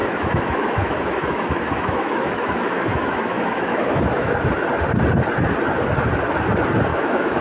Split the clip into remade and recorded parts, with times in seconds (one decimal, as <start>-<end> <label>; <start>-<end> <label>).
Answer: 0.0-4.3 remade; 4.3-6.9 recorded; 6.9-7.4 remade